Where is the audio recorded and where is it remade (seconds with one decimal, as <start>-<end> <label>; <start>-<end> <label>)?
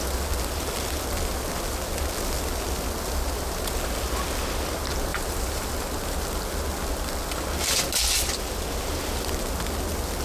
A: 0.0-5.1 recorded; 5.1-5.7 remade; 5.7-10.2 recorded